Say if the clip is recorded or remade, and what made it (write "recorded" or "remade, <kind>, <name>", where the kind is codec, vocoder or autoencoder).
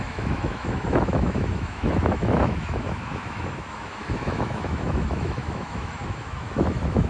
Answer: remade, autoencoder, DAC-VAE